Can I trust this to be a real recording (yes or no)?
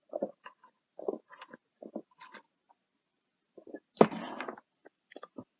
yes